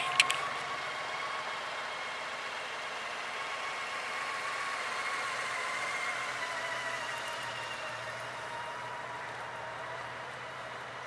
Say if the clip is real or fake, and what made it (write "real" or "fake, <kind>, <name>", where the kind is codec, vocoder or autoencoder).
real